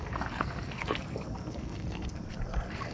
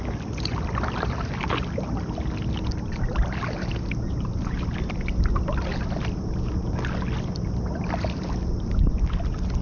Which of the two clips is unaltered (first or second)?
second